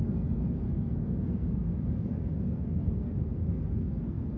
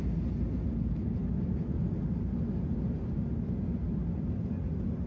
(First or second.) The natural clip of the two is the second